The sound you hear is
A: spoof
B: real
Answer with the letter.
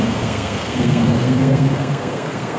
A